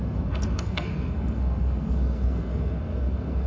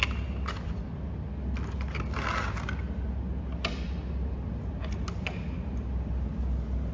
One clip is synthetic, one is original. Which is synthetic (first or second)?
first